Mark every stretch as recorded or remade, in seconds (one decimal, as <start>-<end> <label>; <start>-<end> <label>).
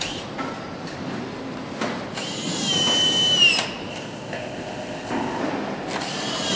0.0-3.9 recorded; 3.9-5.4 remade; 5.4-6.6 recorded